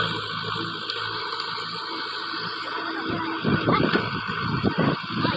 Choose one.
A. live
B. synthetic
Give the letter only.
A